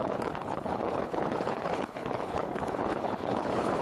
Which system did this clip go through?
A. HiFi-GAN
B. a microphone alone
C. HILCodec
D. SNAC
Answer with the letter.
C